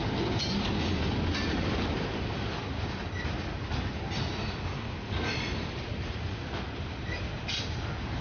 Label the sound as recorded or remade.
recorded